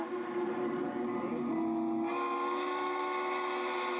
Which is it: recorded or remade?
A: recorded